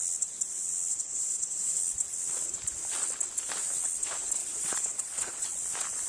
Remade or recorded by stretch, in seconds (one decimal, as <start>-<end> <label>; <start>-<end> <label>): 0.0-0.9 recorded; 0.9-1.8 remade; 1.8-4.4 recorded; 4.4-5.4 remade; 5.4-6.1 recorded